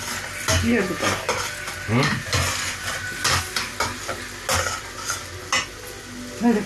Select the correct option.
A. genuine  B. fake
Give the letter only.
A